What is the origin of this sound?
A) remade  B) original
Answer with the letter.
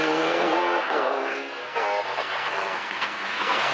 A